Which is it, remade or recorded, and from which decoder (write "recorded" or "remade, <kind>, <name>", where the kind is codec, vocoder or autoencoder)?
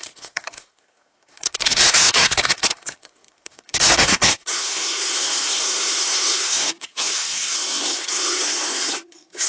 remade, codec, SNAC